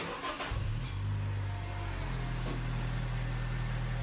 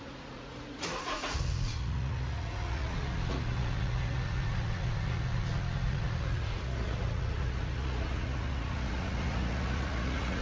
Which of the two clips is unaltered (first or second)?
first